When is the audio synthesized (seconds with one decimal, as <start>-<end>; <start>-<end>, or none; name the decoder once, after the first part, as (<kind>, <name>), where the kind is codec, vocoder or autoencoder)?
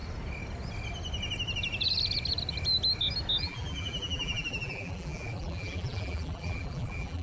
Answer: 3.4-7.2 (vocoder, BigVGAN v2)